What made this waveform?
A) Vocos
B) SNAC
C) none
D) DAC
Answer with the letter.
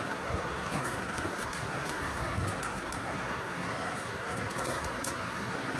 B